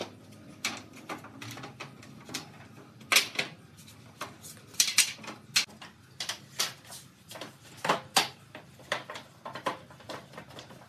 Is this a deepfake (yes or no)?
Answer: no